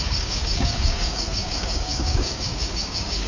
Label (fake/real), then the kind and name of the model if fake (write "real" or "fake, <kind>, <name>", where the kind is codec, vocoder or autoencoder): fake, codec, DAC